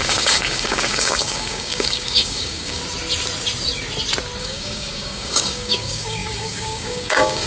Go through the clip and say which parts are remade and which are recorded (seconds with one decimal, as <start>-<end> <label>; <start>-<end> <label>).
0.0-2.8 remade; 2.8-4.4 recorded; 4.4-7.5 remade